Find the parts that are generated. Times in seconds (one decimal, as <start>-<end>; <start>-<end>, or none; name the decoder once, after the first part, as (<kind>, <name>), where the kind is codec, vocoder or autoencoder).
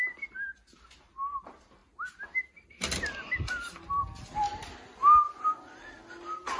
none